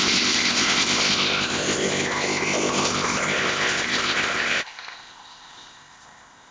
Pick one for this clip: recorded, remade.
remade